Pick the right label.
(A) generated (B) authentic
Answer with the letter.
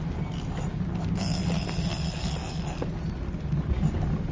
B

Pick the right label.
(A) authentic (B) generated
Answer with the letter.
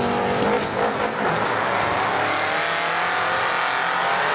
A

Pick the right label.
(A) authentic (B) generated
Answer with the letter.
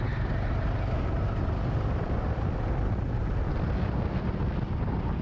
A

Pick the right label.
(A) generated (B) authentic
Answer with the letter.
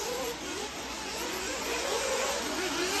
A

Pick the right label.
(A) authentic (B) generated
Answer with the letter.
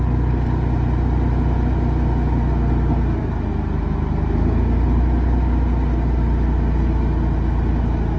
A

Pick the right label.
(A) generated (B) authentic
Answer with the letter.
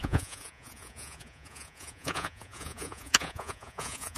A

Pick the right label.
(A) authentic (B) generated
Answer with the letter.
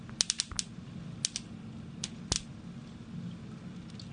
A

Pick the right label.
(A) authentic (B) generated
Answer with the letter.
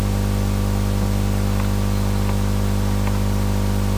A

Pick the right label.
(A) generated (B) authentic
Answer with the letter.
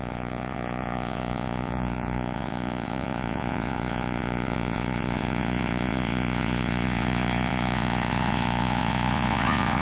A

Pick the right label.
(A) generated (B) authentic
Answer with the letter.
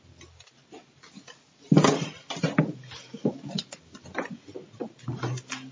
B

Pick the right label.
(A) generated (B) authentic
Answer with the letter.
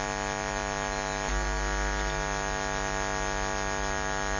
B